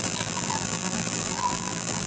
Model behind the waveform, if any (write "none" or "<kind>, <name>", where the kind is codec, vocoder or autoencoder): vocoder, BigVGAN v2